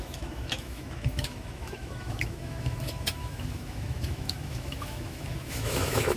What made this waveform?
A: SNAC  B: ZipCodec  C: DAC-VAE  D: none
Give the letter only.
C